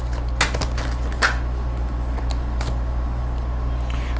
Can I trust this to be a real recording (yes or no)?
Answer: yes